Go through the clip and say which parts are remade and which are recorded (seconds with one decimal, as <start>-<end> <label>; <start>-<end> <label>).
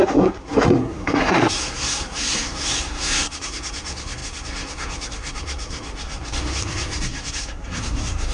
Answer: 0.0-8.3 remade